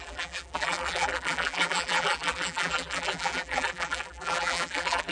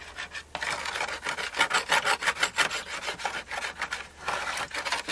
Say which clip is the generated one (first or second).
first